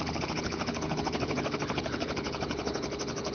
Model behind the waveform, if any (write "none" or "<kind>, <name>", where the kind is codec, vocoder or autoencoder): codec, HILCodec